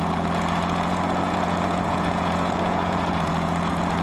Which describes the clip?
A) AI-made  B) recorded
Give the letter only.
A